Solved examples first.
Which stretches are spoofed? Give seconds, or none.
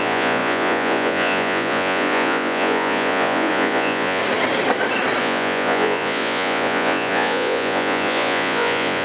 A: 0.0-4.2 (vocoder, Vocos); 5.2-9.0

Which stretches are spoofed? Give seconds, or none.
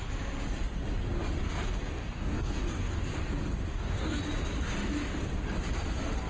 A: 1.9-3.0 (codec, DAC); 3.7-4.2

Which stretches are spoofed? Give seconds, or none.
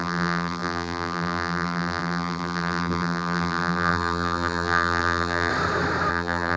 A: 0.0-5.5 (vocoder, BigVGAN v2); 6.1-6.6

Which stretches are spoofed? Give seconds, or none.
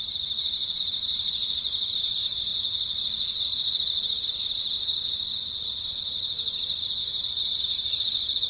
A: none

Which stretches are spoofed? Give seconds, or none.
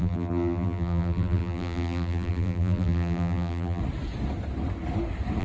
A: 0.0-3.8 (vocoder, BigVGAN v2)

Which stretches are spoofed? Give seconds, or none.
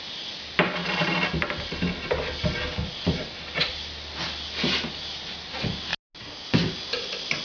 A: none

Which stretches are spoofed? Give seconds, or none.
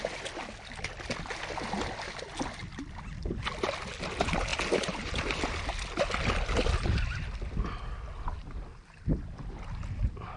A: none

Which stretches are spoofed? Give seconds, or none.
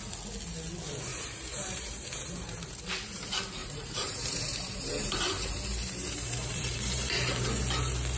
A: 1.1-2.9 (vocoder, BigVGAN v2); 3.6-7.6